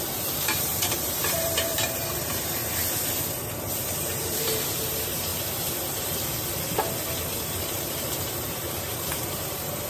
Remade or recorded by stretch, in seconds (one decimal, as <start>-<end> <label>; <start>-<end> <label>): 0.0-2.6 remade; 2.6-3.8 recorded; 3.8-5.3 remade; 5.3-7.6 recorded; 7.6-9.9 remade